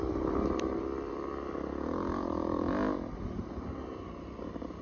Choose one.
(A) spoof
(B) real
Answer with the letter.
B